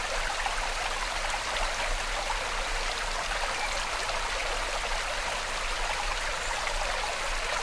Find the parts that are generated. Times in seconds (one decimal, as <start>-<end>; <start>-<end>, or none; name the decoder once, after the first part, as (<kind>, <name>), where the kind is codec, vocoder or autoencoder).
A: none